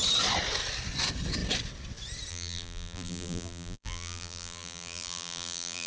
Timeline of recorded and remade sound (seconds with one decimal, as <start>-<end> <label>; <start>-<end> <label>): 0.0-2.3 recorded; 2.3-5.9 remade